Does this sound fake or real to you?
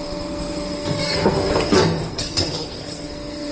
fake